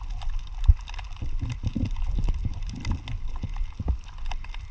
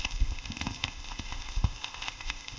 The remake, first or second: second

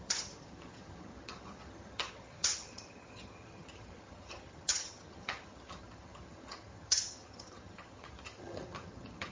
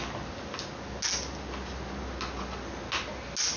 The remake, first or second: first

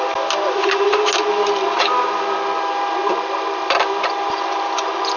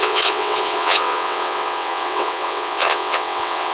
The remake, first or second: second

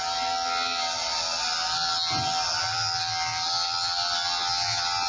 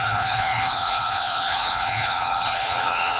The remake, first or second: second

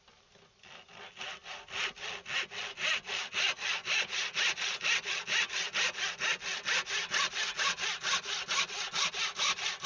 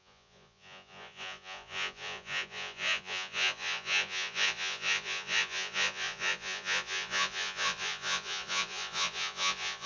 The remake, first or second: second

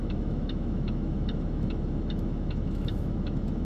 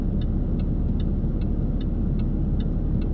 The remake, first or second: first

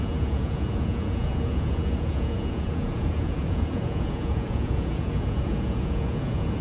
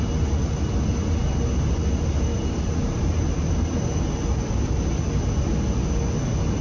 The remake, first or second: first